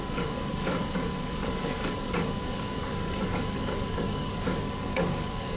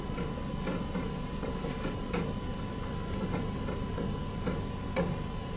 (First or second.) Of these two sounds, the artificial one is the first